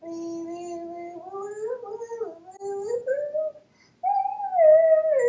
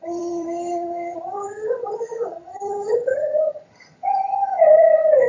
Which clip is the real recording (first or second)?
first